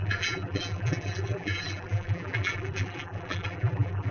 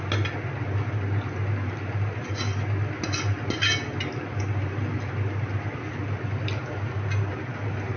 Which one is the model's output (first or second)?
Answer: first